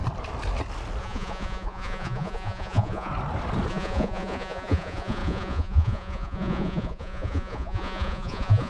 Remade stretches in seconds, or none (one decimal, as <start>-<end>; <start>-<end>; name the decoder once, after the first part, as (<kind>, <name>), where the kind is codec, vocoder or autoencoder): 1.0-3.1 (vocoder, Vocos); 3.7-8.7

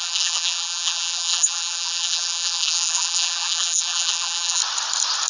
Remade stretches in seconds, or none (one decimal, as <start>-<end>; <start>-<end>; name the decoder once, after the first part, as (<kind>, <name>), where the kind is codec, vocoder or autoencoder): 0.0-4.6 (vocoder, BigVGAN v2)

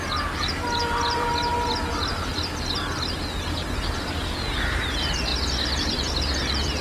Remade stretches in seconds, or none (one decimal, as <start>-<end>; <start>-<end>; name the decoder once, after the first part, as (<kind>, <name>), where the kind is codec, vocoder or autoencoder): 0.0-1.3 (vocoder, BigVGAN v2); 1.8-2.3; 3.4-5.3; 5.9-6.8